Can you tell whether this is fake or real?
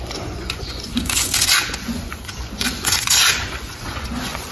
fake